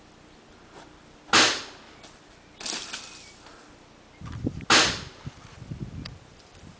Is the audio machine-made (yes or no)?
no